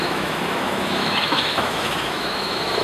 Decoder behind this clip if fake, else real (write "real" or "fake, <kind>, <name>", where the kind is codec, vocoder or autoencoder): fake, autoencoder, DAC-VAE